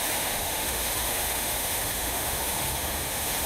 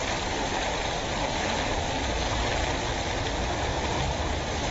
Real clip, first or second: second